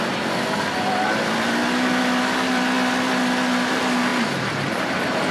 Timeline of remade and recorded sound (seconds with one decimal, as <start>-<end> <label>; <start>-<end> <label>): 0.0-5.3 recorded